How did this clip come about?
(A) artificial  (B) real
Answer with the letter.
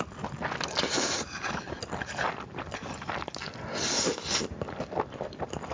B